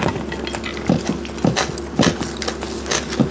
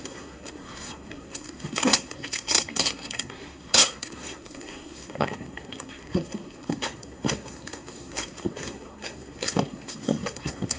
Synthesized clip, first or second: second